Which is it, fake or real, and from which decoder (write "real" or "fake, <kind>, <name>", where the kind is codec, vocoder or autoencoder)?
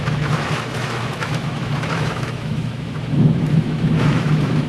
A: fake, autoencoder, DAC-VAE